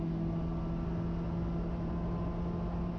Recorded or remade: recorded